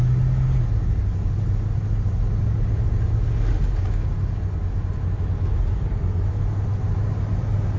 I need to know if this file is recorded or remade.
recorded